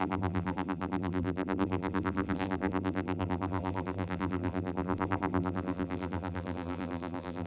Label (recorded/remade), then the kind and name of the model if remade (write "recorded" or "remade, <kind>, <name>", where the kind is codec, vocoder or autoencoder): remade, vocoder, BigVGAN v2